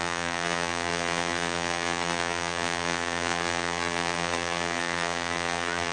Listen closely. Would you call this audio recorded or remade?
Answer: remade